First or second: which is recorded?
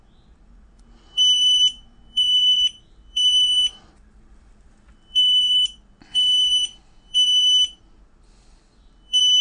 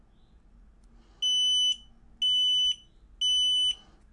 second